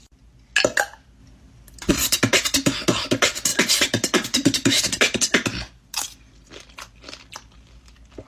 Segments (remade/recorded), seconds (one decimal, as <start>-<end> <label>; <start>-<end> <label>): 0.0-8.3 recorded